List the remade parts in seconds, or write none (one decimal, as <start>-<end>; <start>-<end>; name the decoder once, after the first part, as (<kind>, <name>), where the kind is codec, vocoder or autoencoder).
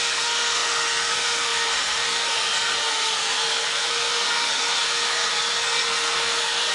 0.0-6.7 (codec, SNAC)